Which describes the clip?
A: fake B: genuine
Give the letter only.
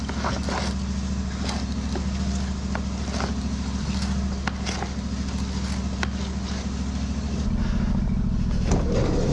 B